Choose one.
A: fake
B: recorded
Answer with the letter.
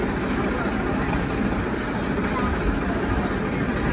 B